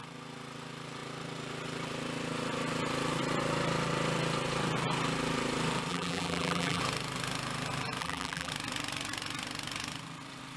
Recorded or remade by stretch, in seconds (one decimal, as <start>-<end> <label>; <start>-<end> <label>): 0.0-5.9 recorded; 5.9-6.8 remade; 6.8-8.0 recorded; 8.0-8.5 remade; 8.5-10.6 recorded